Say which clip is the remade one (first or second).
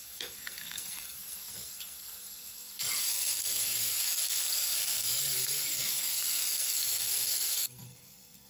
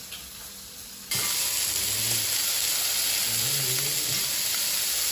first